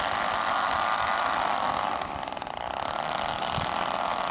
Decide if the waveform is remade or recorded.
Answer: recorded